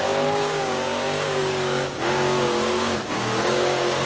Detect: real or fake fake